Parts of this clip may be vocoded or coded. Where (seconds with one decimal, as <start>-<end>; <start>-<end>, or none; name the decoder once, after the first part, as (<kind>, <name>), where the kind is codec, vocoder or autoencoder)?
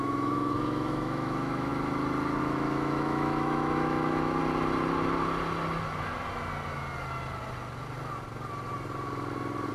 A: 0.0-1.7 (autoencoder, DAC-VAE); 2.4-4.4